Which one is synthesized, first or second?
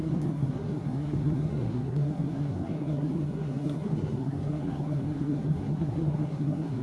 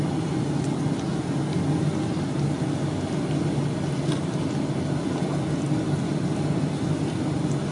first